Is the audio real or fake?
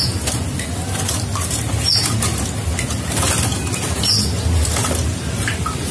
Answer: real